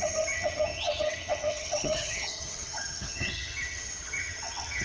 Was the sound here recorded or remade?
remade